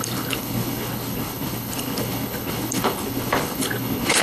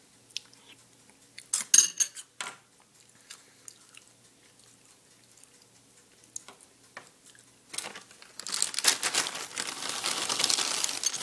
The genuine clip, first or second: second